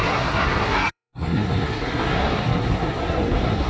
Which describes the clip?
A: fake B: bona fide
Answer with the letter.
A